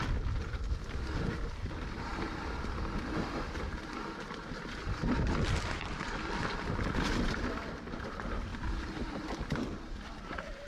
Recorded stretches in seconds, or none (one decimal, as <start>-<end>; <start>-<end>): 0.0-10.7